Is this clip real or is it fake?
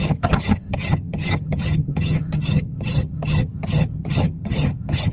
fake